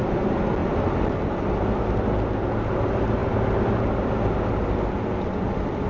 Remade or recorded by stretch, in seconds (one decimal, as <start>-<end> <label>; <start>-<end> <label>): 0.0-5.9 recorded